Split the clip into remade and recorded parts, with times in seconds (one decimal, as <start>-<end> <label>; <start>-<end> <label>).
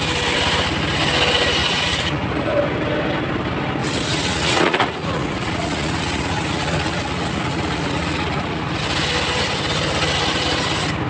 0.0-1.6 recorded; 1.6-2.5 remade; 2.5-3.8 recorded; 3.8-8.8 remade; 8.8-11.1 recorded